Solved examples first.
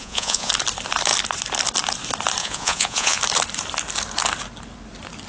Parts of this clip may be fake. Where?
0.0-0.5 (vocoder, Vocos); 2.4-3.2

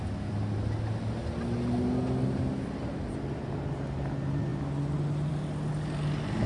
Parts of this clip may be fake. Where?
none

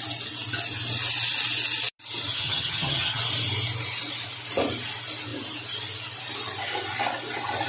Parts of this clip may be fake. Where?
2.3-3.2 (vocoder, HiFi-GAN)

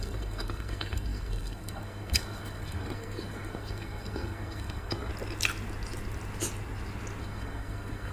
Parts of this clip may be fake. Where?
0.0-5.1 (codec, SNAC); 7.2-8.1